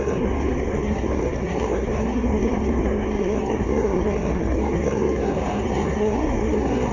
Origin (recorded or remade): remade